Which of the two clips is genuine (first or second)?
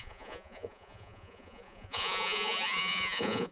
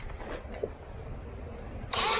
second